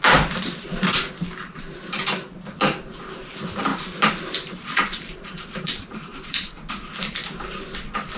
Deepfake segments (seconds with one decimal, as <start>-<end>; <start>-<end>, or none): 3.7-6.7

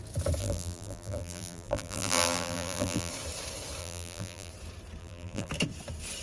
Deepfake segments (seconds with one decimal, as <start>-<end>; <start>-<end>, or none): 0.4-3.1; 3.8-4.5; 5.0-5.5

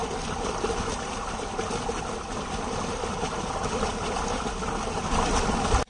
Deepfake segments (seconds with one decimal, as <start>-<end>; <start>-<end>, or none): 0.0-0.6

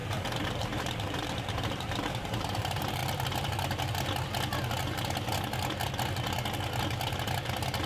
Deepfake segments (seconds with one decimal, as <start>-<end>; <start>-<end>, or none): 0.0-3.0

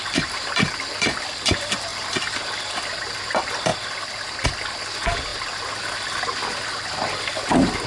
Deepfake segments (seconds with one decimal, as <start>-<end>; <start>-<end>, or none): 0.0-1.9; 2.7-3.7; 4.8-5.3; 6.2-7.9

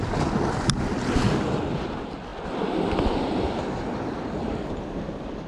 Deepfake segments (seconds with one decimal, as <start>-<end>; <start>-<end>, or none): none